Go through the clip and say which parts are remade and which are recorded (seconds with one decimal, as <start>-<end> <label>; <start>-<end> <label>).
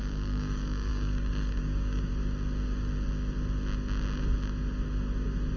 0.0-2.1 remade; 2.1-5.6 recorded